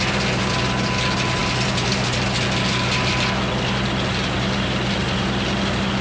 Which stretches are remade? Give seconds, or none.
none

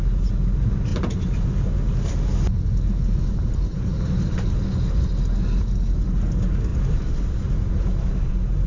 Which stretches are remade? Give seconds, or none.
none

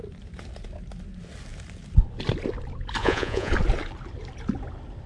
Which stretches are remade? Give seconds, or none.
3.0-3.5 (vocoder, Vocos)

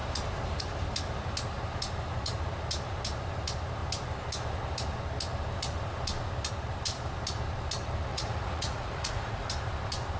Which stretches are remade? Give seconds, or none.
8.1-9.5 (vocoder, Vocos)

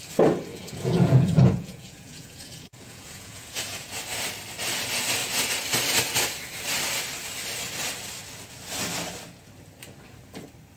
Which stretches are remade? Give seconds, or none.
0.5-3.8 (vocoder, Vocos)

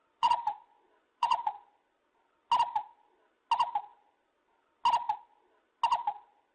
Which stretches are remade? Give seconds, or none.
0.0-1.7 (vocoder, Vocos)

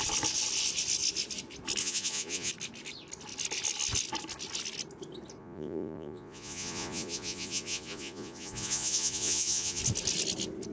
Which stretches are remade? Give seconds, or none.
1.8-2.5 (vocoder, Vocos); 5.4-9.8

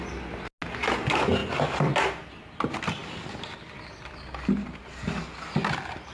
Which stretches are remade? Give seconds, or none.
none